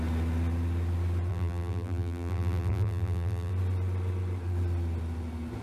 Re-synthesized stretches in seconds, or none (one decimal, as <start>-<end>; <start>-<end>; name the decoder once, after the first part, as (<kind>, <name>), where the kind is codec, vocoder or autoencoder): 1.3-3.5 (vocoder, BigVGAN v2)